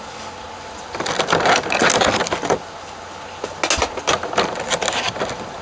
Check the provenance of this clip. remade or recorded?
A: recorded